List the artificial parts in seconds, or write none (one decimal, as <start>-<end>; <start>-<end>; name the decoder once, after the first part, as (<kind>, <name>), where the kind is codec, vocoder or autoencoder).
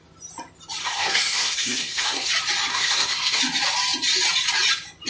0.8-2.3 (codec, SNAC); 2.7-3.4